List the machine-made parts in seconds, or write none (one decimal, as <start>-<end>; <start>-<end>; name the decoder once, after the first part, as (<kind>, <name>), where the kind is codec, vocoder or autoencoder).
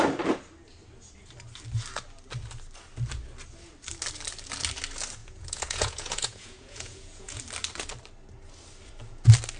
5.2-7.4 (vocoder, Vocos)